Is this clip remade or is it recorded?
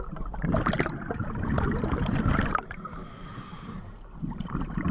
recorded